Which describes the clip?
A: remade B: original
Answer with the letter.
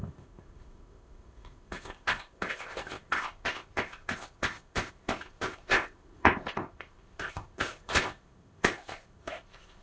A